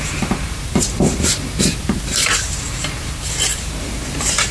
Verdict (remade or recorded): remade